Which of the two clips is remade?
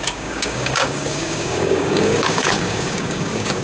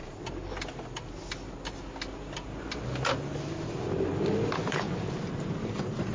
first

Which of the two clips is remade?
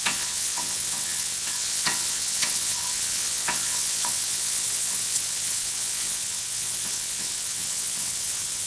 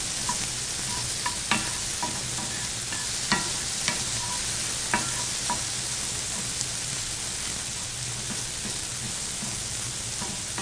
first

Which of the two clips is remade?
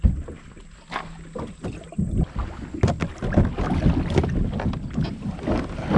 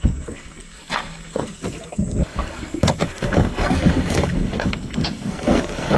second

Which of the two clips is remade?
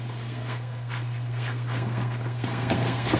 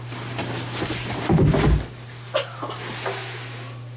first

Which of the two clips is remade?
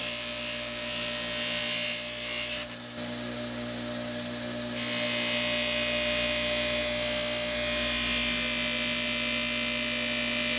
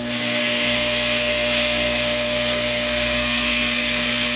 second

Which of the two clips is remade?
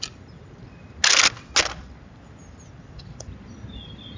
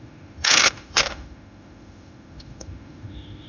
second